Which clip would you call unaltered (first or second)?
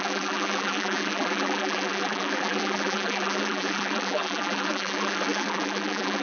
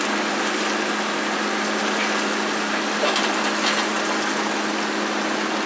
second